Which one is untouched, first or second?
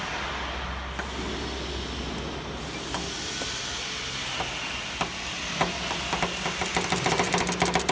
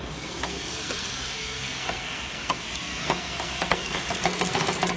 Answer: first